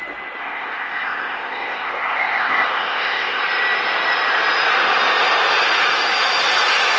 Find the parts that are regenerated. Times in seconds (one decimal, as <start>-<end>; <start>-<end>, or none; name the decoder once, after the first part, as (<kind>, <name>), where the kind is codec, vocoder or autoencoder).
0.4-3.4 (codec, ZipCodec)